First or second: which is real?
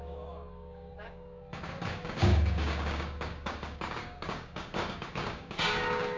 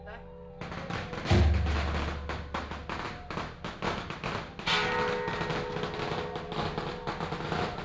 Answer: second